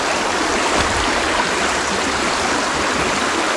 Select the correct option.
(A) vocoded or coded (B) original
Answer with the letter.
A